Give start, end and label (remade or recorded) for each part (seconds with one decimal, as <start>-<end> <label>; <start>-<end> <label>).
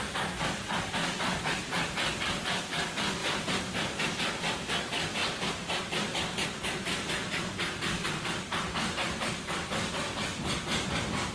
0.0-1.0 recorded; 1.0-1.6 remade; 1.6-5.2 recorded; 5.2-8.1 remade; 8.1-11.3 recorded